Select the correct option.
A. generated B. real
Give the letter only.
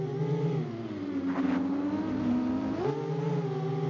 B